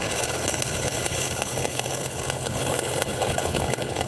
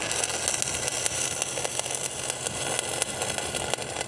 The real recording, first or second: second